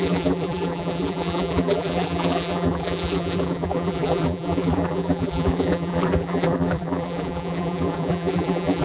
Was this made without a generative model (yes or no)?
no